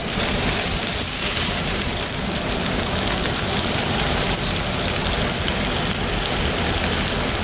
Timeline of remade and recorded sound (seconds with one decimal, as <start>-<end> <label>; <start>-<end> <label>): 0.0-4.4 remade; 4.4-7.4 recorded